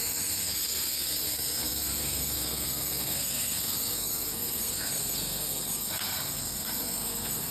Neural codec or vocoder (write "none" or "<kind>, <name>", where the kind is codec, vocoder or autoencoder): codec, SNAC